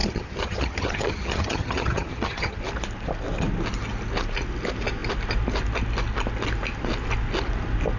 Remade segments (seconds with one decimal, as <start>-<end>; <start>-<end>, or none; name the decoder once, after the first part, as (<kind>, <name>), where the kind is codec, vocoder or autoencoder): 0.0-2.6 (vocoder, HiFi-GAN)

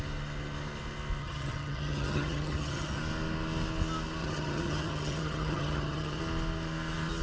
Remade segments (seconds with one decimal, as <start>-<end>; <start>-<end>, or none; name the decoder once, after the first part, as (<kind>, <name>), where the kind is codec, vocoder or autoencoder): 1.2-3.0 (vocoder, HiFi-GAN); 4.2-6.2

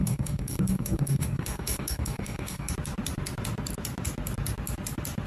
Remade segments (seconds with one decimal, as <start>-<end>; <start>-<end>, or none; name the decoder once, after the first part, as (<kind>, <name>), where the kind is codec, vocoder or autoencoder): 0.0-2.7 (codec, DAC)

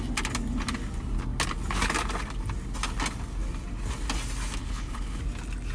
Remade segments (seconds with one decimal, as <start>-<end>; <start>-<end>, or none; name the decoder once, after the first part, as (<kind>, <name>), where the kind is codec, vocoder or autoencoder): 4.6-5.2 (codec, HILCodec)

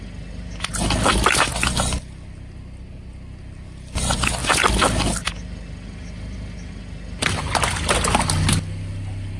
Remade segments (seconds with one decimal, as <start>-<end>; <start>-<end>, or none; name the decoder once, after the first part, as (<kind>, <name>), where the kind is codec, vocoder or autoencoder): none

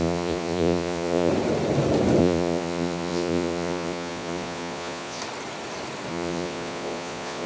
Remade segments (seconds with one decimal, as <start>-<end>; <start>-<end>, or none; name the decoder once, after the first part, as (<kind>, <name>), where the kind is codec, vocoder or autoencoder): 0.0-1.3 (vocoder, Vocos); 2.2-5.2; 6.1-7.5

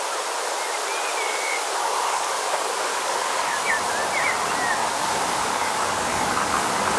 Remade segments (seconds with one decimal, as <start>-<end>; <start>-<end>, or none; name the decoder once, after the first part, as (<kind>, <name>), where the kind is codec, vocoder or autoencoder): 1.8-3.7 (codec, DAC); 4.8-7.0

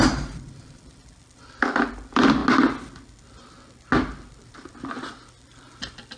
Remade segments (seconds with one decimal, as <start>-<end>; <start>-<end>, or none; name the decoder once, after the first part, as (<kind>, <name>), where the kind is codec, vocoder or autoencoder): 0.0-2.4 (vocoder, BigVGAN v2); 4.5-6.2